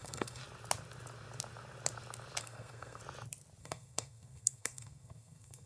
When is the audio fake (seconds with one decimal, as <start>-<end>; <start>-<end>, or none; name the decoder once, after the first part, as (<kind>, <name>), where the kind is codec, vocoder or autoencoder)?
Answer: 0.0-0.4 (codec, SNAC); 2.4-3.0; 3.6-5.7